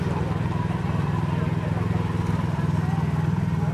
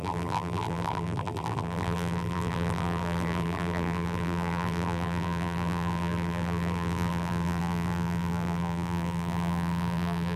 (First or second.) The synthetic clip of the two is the second